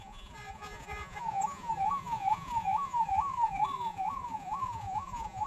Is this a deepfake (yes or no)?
yes